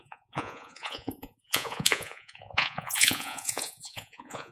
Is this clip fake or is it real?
fake